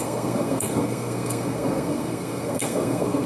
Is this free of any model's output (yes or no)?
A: no